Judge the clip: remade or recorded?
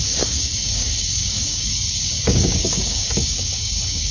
remade